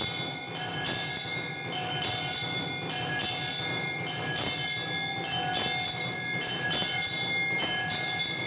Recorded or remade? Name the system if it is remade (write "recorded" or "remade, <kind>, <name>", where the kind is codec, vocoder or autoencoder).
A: recorded